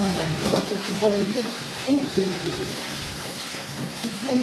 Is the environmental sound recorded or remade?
remade